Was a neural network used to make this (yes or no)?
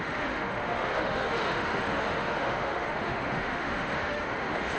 yes